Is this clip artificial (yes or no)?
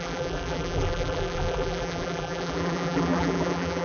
yes